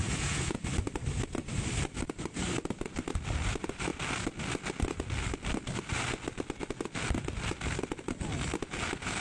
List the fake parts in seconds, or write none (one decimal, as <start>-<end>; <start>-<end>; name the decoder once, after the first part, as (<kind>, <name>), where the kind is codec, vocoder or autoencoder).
0.0-0.6 (vocoder, Vocos)